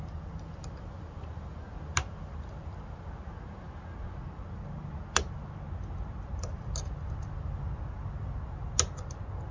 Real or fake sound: real